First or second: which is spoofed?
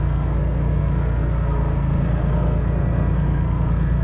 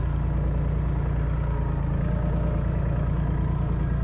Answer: first